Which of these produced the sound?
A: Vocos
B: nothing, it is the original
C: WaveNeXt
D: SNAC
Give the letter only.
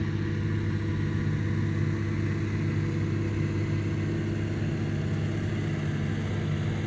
B